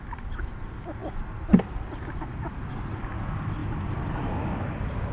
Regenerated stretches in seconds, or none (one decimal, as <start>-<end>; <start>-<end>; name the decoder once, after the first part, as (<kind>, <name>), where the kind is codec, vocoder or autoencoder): none